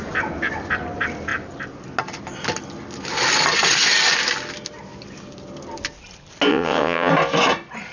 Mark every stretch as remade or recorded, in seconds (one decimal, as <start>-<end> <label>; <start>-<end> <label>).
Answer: 0.0-6.5 recorded; 6.5-7.1 remade; 7.1-7.9 recorded